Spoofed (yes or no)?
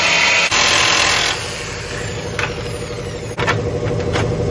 no